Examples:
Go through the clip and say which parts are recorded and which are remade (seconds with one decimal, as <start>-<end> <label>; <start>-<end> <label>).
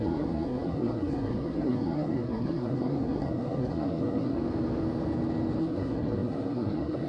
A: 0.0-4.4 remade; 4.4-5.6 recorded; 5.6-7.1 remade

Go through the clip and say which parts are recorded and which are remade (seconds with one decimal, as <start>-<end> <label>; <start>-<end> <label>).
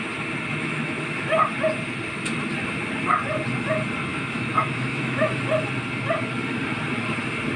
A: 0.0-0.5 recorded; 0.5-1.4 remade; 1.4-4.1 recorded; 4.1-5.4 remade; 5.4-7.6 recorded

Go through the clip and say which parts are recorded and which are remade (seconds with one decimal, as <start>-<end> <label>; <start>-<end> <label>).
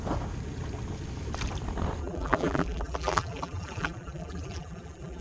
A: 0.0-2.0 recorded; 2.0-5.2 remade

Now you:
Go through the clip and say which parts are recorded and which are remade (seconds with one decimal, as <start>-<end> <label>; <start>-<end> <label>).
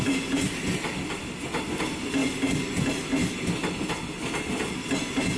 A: 0.0-5.4 recorded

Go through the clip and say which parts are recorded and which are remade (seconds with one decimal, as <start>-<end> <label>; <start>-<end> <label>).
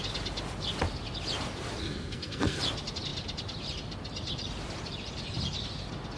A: 0.0-1.8 recorded; 1.8-2.6 remade; 2.6-6.2 recorded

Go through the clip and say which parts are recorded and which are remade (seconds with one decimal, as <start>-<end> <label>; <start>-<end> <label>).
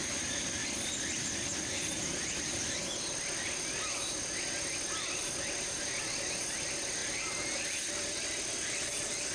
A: 0.0-0.6 recorded; 0.6-1.2 remade; 1.2-9.3 recorded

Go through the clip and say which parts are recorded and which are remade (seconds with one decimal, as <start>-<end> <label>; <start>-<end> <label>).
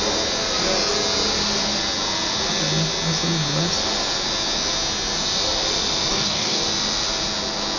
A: 0.0-6.1 recorded; 6.1-6.6 remade; 6.6-7.8 recorded